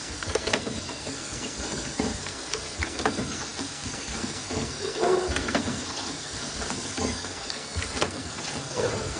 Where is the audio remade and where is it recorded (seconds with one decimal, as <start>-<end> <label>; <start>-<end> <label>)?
0.0-9.2 remade